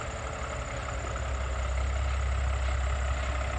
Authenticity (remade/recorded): recorded